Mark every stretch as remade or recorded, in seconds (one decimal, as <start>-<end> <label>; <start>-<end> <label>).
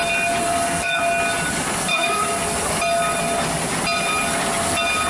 0.0-0.4 recorded; 0.4-1.0 remade; 1.0-1.9 recorded; 1.9-2.4 remade; 2.4-5.1 recorded